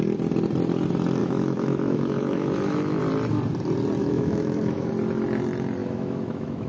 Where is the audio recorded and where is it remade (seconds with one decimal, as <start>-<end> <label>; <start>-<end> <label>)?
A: 0.0-1.2 recorded; 1.2-3.0 remade; 3.0-4.0 recorded; 4.0-4.9 remade; 4.9-5.8 recorded; 5.8-6.7 remade